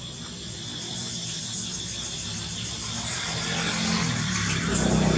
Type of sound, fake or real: real